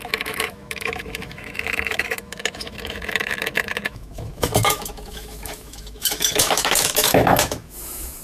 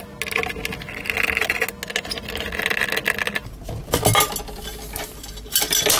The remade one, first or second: first